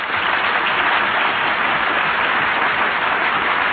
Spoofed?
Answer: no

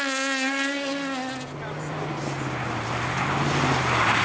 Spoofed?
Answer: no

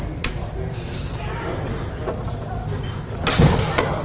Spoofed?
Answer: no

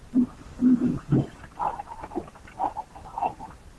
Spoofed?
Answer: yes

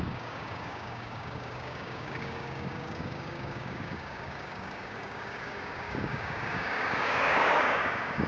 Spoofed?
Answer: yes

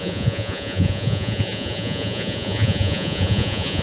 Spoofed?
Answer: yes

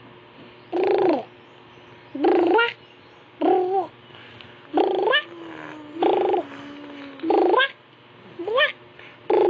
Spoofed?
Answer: no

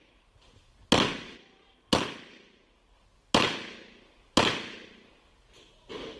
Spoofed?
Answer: no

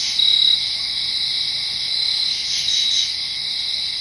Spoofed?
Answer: no